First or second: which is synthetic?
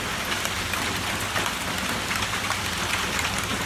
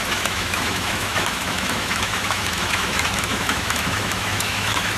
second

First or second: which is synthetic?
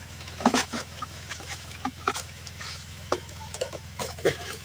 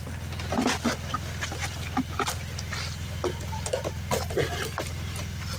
first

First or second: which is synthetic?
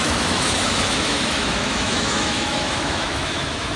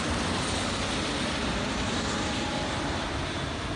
first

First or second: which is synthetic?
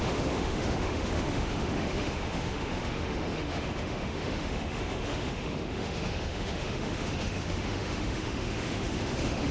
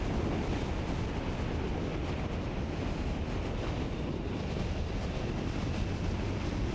first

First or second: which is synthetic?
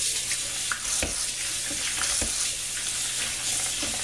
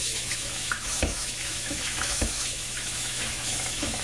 second